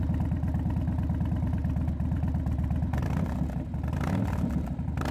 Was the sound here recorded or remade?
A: recorded